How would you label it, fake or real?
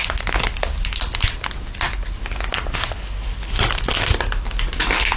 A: real